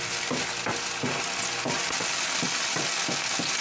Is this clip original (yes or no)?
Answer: yes